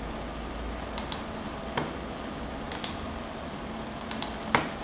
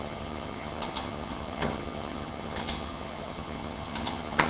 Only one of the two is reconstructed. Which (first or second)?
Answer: second